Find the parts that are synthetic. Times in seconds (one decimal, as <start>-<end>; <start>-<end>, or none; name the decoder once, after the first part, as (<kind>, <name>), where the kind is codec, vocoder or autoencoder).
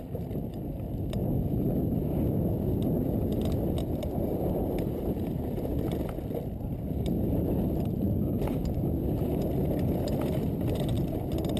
0.0-1.2 (vocoder, BigVGAN v2); 3.9-5.7; 8.6-11.6